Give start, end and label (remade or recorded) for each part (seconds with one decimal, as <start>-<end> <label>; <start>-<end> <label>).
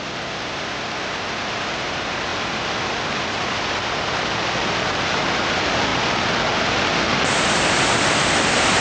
0.0-8.8 recorded